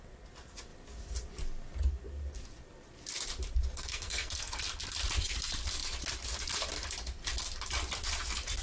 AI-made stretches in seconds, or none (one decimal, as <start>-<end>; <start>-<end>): 3.8-4.6